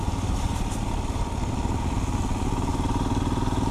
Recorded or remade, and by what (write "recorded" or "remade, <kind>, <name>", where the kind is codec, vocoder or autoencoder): recorded